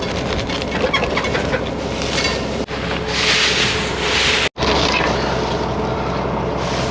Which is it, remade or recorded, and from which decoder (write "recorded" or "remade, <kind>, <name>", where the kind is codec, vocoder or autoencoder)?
recorded